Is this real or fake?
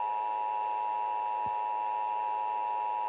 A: real